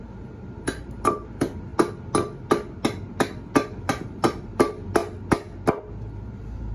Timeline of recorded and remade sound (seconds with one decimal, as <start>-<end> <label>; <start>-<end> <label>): 0.0-1.7 remade; 1.7-3.7 recorded; 3.7-5.0 remade; 5.0-5.8 recorded; 5.8-6.7 remade